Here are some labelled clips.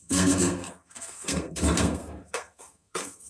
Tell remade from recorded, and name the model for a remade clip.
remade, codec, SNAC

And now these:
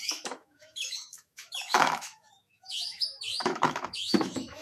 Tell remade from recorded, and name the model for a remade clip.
remade, autoencoder, DAC-VAE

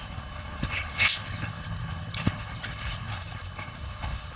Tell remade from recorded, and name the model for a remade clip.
remade, codec, HILCodec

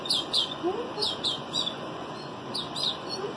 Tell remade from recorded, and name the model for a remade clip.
remade, vocoder, Vocos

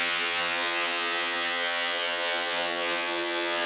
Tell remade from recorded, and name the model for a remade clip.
remade, vocoder, HiFi-GAN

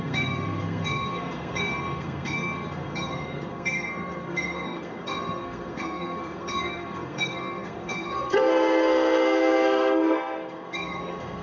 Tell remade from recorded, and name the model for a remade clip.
remade, codec, SNAC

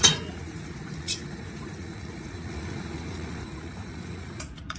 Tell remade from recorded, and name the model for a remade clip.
remade, vocoder, Vocos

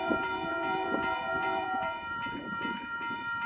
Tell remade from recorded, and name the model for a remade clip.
remade, vocoder, Vocos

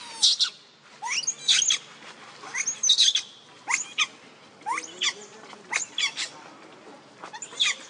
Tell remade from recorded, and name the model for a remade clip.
recorded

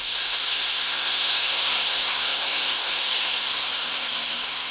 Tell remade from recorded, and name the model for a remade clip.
remade, codec, SNAC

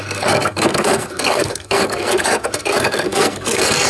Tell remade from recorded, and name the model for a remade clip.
remade, codec, SNAC